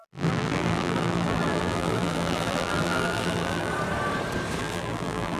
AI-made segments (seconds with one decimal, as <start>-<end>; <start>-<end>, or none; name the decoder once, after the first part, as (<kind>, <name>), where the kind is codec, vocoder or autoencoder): 0.0-3.7 (vocoder, BigVGAN v2); 4.6-5.4